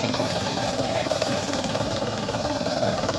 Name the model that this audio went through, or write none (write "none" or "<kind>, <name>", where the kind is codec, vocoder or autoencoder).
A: codec, SNAC